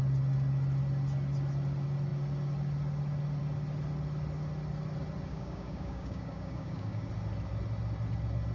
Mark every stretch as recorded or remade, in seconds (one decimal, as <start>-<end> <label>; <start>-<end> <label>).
0.0-5.3 recorded; 5.3-7.1 remade; 7.1-8.5 recorded

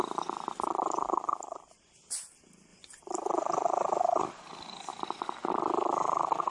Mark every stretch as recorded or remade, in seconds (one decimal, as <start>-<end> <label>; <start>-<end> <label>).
0.0-6.5 recorded

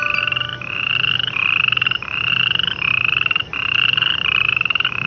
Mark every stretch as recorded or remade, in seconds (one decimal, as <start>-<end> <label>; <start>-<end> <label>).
0.0-5.1 recorded

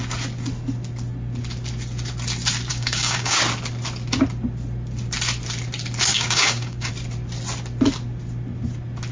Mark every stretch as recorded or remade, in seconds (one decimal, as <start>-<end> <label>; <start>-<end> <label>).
0.0-2.7 recorded; 2.7-3.4 remade; 3.4-6.1 recorded; 6.1-6.9 remade; 6.9-9.1 recorded

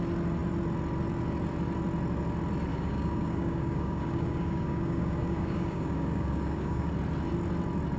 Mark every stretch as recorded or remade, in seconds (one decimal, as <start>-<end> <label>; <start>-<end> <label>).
0.0-2.7 recorded; 2.7-6.9 remade; 6.9-8.0 recorded

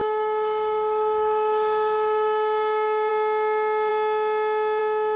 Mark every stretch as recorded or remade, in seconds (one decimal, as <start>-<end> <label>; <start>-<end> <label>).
0.0-3.1 remade; 3.1-5.2 recorded

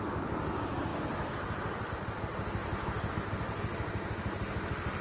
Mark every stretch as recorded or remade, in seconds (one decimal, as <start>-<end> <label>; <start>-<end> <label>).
0.0-5.0 recorded